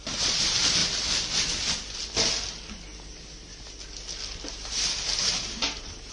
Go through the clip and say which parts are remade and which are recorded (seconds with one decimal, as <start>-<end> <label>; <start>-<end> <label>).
0.0-0.8 remade; 0.8-4.5 recorded; 4.5-6.1 remade